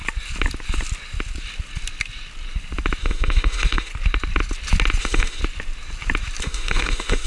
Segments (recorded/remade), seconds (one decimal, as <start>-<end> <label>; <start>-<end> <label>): 0.0-3.0 recorded; 3.0-3.9 remade; 3.9-5.0 recorded; 5.0-5.4 remade; 5.4-6.4 recorded; 6.4-7.3 remade